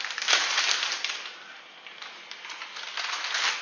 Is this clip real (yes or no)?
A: yes